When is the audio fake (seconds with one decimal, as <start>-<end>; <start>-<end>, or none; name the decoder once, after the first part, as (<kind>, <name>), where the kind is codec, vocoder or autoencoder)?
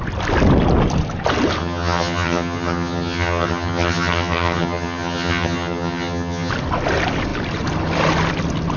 1.6-6.5 (vocoder, HiFi-GAN)